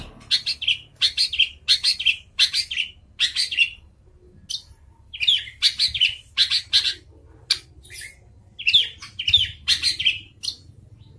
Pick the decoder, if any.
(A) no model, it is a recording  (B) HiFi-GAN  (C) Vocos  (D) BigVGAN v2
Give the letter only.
A